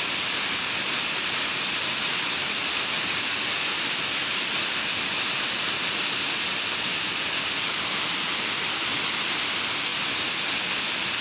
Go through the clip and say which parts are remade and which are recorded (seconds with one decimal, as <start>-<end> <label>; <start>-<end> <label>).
0.0-11.2 recorded

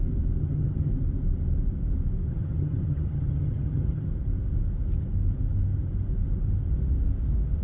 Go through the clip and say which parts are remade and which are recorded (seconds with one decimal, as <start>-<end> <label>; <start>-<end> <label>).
0.0-0.4 recorded; 0.4-0.9 remade; 0.9-2.3 recorded; 2.3-4.1 remade; 4.1-7.6 recorded

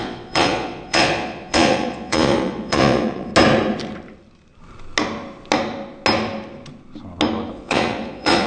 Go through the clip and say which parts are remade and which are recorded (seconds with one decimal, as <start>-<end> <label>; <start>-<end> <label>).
0.0-3.3 remade; 3.3-7.5 recorded; 7.5-8.5 remade